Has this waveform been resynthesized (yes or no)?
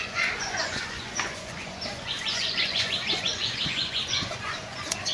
yes